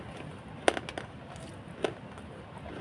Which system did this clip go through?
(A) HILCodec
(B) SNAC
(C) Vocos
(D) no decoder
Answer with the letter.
D